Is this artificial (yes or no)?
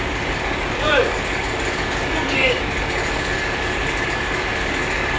yes